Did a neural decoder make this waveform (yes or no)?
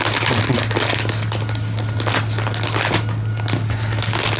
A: no